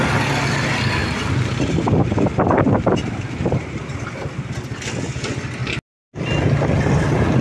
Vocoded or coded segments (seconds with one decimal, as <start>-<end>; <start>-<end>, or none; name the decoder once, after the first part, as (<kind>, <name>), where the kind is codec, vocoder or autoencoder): 1.0-4.5 (vocoder, BigVGAN v2)

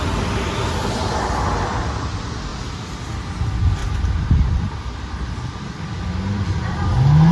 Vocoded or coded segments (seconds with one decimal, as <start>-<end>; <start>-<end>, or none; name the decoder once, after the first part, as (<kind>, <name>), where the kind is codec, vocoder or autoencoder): 3.8-4.8 (vocoder, BigVGAN v2)

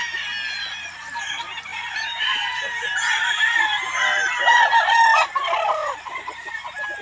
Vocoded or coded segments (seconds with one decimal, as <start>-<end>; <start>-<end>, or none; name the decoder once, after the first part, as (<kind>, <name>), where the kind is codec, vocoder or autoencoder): 1.7-2.8 (vocoder, BigVGAN v2); 5.8-6.6

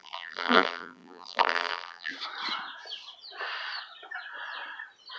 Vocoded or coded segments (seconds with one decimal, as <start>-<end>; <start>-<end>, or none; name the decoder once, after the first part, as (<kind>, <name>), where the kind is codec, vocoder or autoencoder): 0.0-2.1 (vocoder, BigVGAN v2)

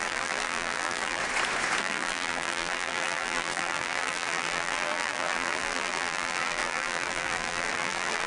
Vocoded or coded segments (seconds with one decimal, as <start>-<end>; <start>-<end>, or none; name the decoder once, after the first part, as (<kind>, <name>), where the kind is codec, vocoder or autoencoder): 0.0-1.2 (vocoder, BigVGAN v2); 1.8-8.3

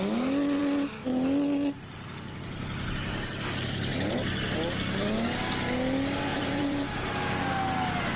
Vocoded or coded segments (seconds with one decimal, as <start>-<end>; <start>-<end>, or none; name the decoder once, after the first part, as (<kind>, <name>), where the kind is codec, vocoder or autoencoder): 6.3-7.2 (vocoder, BigVGAN v2)